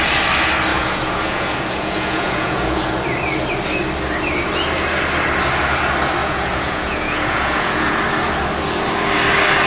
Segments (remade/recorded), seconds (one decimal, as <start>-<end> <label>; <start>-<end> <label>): 0.0-0.7 recorded; 0.7-3.0 remade; 3.0-6.2 recorded; 6.2-8.0 remade; 8.0-9.7 recorded